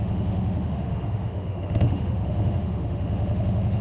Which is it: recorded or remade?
remade